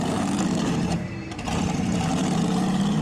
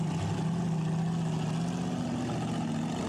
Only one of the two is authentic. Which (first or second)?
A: second